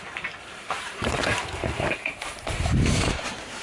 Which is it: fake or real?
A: fake